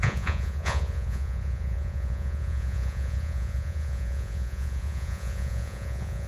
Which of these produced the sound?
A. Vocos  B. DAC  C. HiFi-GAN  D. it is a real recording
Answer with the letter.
A